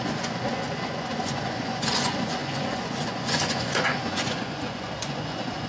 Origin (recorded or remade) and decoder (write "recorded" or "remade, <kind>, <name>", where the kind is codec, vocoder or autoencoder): remade, vocoder, Vocos